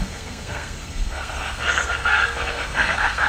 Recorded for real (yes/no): no